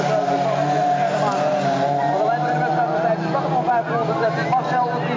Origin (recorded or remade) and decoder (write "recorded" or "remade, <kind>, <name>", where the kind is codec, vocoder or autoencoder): recorded